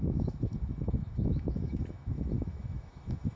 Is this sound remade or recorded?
remade